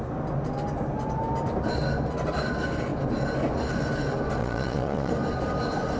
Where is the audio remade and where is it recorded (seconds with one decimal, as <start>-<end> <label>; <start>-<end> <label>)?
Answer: 0.0-4.4 recorded; 4.4-5.1 remade; 5.1-6.0 recorded